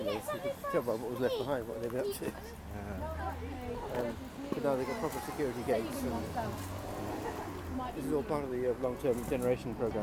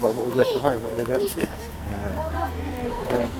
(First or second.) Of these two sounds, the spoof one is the second